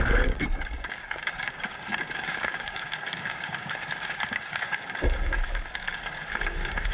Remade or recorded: remade